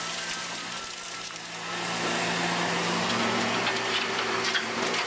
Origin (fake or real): real